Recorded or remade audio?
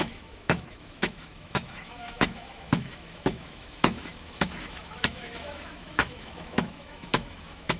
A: remade